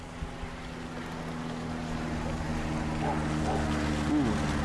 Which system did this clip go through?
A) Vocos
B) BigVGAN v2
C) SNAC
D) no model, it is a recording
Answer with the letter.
D